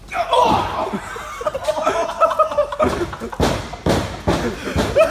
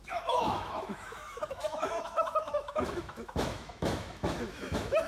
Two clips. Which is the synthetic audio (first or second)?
second